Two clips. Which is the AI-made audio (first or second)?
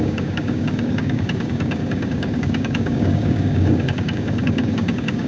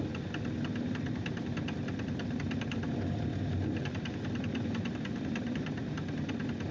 first